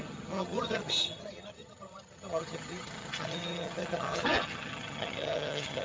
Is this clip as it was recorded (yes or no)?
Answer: no